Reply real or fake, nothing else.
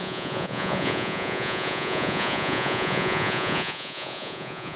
fake